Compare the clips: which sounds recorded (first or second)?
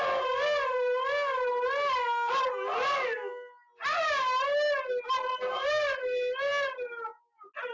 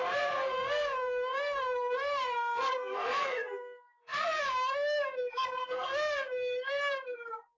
first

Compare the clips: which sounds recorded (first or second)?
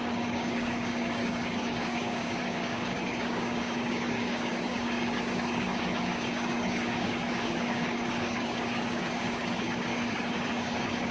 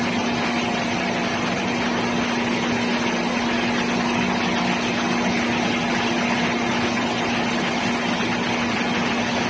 second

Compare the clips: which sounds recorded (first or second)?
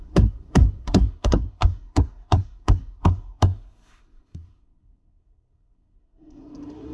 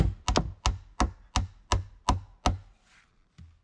second